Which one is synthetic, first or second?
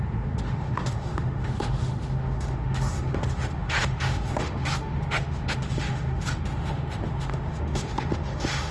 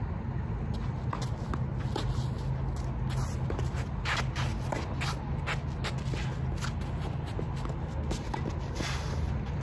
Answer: first